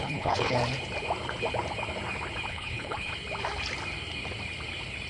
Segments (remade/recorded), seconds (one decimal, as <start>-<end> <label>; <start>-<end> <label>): 0.0-0.6 remade; 0.6-2.5 recorded; 2.5-3.1 remade; 3.1-5.1 recorded